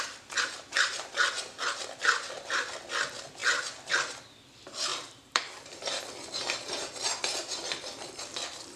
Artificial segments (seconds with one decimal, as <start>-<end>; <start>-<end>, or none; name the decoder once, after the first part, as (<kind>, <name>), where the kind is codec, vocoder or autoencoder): 4.9-6.0 (vocoder, BigVGAN v2)